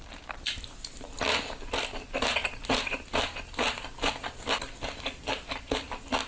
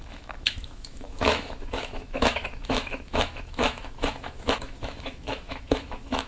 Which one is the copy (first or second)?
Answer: second